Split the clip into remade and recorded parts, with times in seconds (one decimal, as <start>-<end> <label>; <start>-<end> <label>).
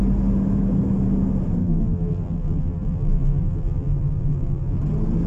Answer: 0.0-1.6 recorded; 1.6-4.8 remade; 4.8-5.3 recorded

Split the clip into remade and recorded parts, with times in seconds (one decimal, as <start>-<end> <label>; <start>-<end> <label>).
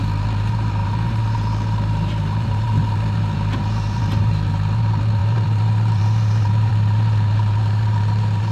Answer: 0.0-8.5 remade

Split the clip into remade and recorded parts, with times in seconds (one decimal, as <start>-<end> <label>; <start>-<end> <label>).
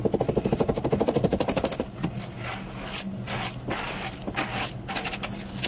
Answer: 0.0-5.7 recorded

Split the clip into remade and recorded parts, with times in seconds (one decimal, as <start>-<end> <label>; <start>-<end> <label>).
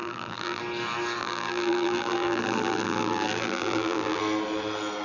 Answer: 0.0-0.6 remade; 0.6-1.2 recorded; 1.2-4.2 remade; 4.2-5.0 recorded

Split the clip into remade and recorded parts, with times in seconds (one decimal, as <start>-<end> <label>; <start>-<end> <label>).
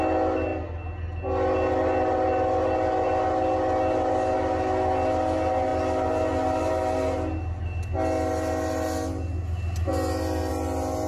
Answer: 0.0-11.1 recorded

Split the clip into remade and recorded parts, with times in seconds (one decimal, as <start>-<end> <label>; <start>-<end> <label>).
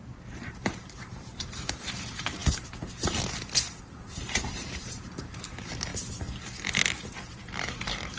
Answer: 0.0-2.4 remade; 2.4-3.7 recorded; 3.7-5.9 remade; 5.9-7.4 recorded; 7.4-8.2 remade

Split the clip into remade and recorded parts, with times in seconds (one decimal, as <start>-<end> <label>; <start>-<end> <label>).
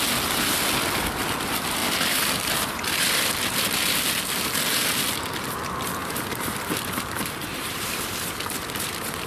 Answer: 0.0-7.5 recorded; 7.5-8.0 remade; 8.0-9.3 recorded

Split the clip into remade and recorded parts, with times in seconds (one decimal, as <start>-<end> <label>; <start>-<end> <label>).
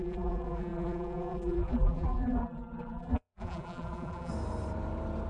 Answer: 0.0-4.3 remade; 4.3-5.3 recorded